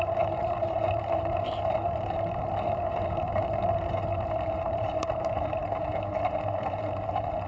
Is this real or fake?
fake